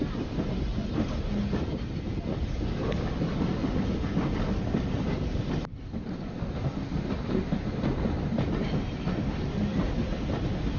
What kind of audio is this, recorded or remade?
recorded